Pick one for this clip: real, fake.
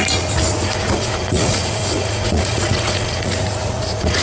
fake